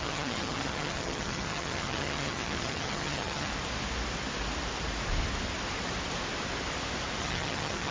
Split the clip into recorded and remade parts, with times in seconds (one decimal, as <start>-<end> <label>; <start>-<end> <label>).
0.0-3.5 remade; 3.5-7.2 recorded; 7.2-7.9 remade